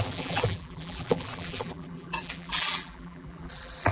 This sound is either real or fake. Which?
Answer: fake